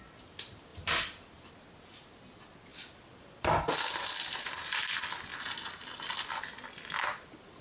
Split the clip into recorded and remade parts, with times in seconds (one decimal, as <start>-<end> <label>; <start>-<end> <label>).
0.0-0.7 recorded; 0.7-1.5 remade; 1.5-7.6 recorded